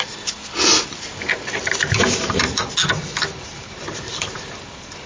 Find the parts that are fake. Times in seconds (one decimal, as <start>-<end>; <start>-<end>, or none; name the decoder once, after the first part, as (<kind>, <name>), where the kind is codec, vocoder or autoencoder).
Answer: 0.0-0.4 (vocoder, BigVGAN v2); 2.0-2.6; 3.4-5.1